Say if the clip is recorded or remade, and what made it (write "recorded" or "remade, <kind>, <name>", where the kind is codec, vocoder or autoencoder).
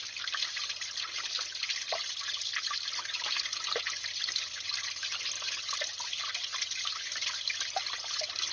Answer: recorded